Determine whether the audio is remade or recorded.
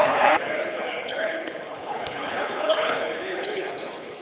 remade